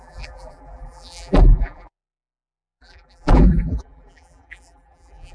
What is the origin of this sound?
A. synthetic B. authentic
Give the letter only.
A